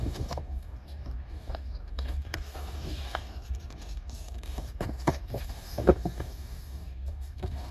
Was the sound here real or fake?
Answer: fake